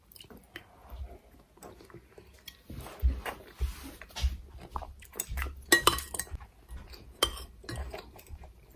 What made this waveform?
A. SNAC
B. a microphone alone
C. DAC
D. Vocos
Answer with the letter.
B